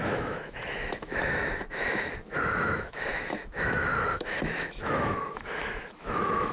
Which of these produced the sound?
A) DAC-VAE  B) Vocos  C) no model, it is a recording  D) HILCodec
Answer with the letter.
A